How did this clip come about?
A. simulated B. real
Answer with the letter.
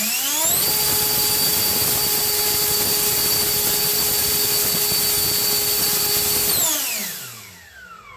B